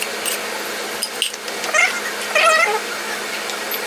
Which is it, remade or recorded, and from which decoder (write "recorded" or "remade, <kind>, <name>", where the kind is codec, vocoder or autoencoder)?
recorded